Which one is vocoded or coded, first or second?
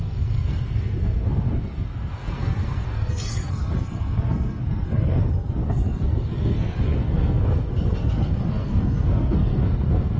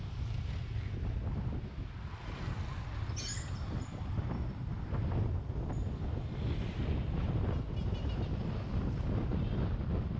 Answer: first